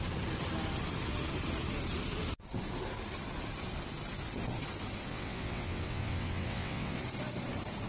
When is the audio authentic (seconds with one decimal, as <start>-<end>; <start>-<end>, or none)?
0.0-5.1; 7.0-7.9